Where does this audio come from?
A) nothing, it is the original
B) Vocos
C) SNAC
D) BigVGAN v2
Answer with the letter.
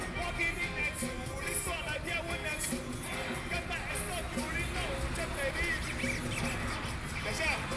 A